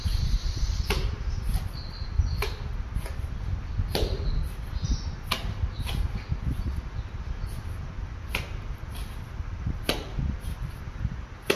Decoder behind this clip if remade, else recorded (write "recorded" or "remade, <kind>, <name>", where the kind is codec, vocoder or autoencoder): recorded